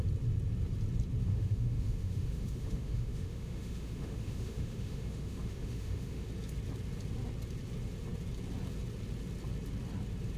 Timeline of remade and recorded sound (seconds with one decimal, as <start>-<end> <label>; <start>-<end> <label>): 0.0-1.3 recorded; 1.3-6.3 remade; 6.3-10.4 recorded